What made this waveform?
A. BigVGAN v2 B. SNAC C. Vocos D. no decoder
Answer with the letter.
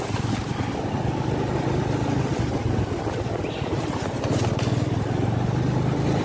D